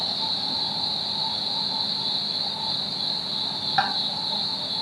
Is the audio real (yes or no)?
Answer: yes